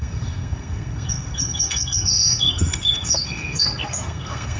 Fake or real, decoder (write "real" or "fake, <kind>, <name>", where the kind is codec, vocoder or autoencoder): fake, codec, SNAC